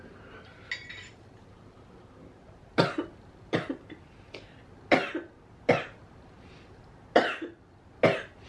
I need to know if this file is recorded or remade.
recorded